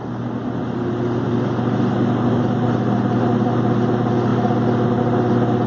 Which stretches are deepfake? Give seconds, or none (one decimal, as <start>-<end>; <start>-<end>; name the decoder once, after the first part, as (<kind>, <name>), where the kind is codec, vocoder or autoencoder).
none